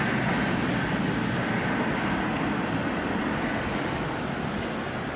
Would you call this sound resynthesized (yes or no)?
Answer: no